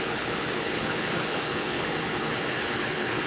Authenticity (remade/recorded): remade